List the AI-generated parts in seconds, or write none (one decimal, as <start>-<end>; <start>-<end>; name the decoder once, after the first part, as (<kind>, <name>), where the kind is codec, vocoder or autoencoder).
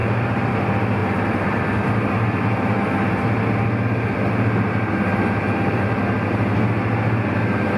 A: 0.0-0.5 (vocoder, BigVGAN v2); 1.0-1.6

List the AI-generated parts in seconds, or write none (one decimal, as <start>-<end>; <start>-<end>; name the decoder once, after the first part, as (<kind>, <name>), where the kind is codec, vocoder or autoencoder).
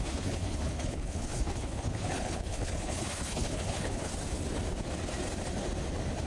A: 0.0-4.1 (codec, HILCodec)